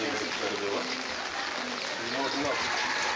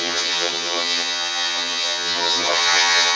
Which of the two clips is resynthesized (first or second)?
second